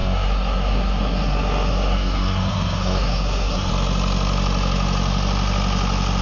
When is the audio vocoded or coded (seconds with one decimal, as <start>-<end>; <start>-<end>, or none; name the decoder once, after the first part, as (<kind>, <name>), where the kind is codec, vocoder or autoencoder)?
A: 0.0-3.7 (codec, SNAC)